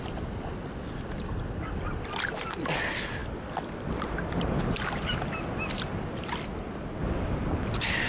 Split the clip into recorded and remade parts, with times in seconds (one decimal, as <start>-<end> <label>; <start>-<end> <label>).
0.0-8.1 recorded